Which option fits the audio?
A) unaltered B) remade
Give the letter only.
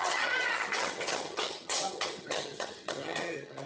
B